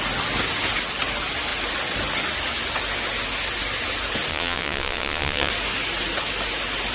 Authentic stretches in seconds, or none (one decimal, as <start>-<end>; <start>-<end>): 0.0-4.3; 5.5-6.9